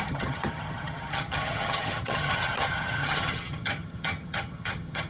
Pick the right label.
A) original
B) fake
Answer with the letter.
B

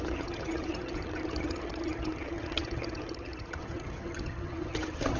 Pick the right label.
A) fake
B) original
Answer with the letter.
A